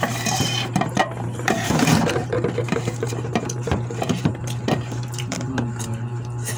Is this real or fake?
fake